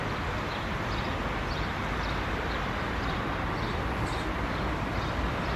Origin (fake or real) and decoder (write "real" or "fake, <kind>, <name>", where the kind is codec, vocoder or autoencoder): real